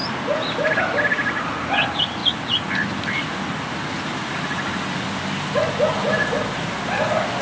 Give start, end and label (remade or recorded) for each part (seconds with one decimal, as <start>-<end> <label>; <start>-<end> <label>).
0.0-7.4 recorded